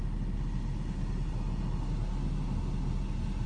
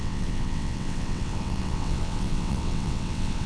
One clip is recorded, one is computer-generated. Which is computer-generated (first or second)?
second